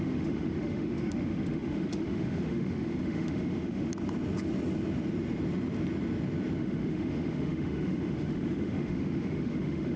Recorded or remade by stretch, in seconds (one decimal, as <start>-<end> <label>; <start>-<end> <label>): 0.0-3.9 remade; 3.9-6.6 recorded; 6.6-10.0 remade